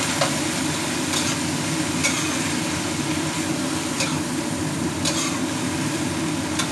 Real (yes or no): yes